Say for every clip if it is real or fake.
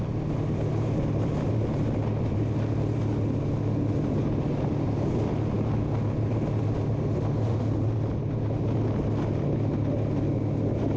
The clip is real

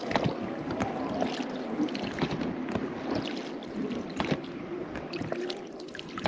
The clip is real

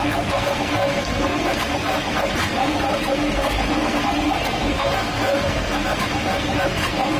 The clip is fake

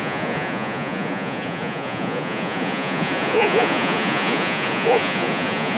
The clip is fake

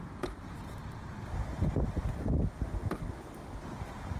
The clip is fake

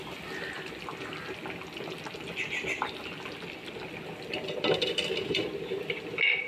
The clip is real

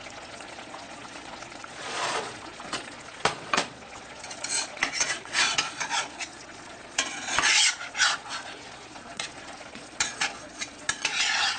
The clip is fake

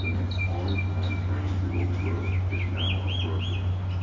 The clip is real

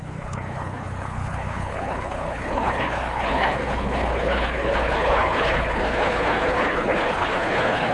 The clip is fake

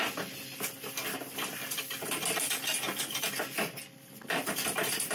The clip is real